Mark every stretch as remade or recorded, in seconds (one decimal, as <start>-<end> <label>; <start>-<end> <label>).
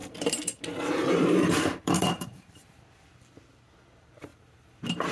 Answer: 0.0-0.6 remade; 0.6-1.2 recorded; 1.2-2.6 remade; 2.6-5.1 recorded